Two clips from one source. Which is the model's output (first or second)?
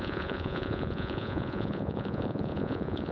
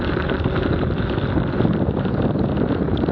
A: first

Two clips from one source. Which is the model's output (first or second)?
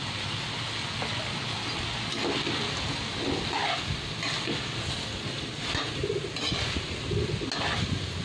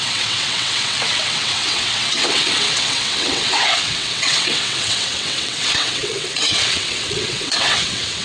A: second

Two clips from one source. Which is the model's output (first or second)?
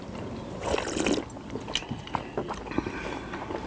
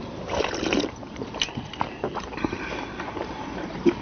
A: second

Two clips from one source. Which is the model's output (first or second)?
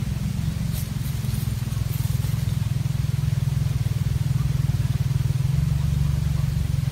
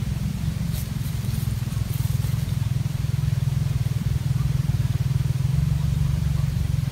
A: second